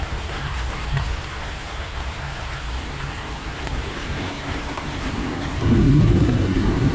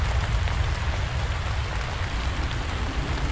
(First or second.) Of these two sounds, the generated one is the first